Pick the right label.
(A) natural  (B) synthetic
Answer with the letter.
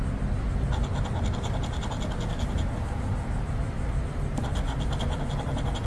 A